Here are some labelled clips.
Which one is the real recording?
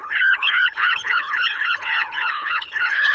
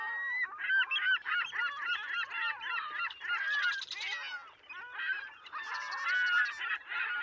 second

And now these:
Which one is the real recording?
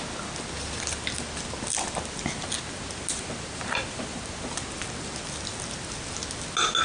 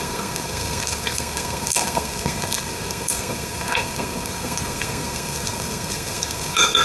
first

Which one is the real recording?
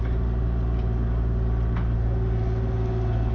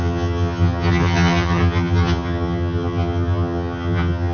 first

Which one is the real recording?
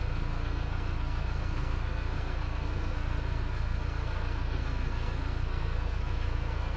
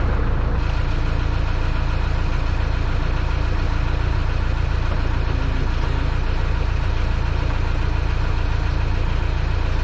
second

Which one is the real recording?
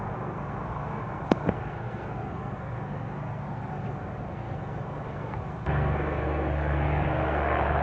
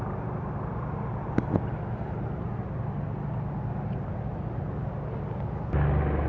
second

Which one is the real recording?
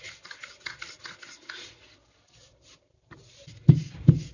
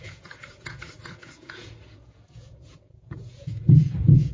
first